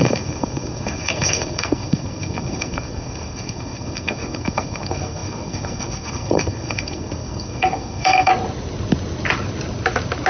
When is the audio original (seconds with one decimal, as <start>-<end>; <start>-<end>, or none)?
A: 8.3-10.3